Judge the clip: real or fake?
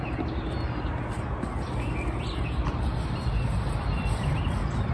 real